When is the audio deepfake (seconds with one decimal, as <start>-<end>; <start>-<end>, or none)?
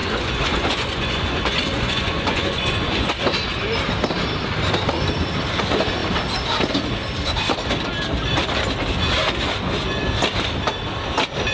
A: 0.0-3.1